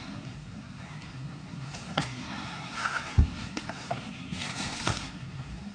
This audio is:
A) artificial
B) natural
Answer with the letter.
A